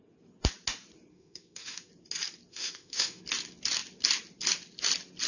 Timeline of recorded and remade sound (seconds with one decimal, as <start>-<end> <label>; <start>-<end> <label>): 0.0-1.1 recorded; 1.1-1.9 remade; 1.9-2.5 recorded; 2.5-3.2 remade; 3.2-5.3 recorded